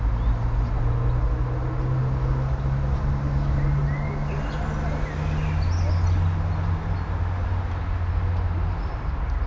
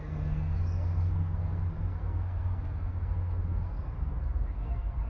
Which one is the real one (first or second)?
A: first